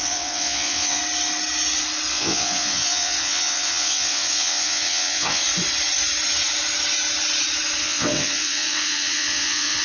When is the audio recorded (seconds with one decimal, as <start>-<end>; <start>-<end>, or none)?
1.0-2.1; 5.4-7.8